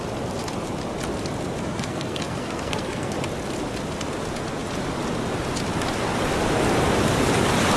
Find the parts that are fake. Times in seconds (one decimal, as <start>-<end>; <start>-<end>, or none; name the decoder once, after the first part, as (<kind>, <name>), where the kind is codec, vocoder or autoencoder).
1.6-3.1 (codec, SNAC)